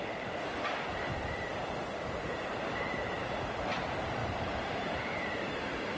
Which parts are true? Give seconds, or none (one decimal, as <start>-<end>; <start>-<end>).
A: none